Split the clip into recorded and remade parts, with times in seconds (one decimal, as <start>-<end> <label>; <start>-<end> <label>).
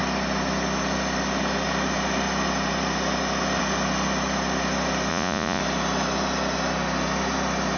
0.0-5.1 recorded; 5.1-5.6 remade; 5.6-7.8 recorded